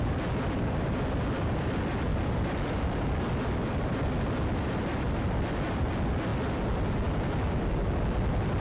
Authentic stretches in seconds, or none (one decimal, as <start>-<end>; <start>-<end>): 0.0-8.6